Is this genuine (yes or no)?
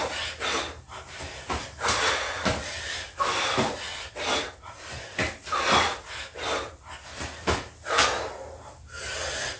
yes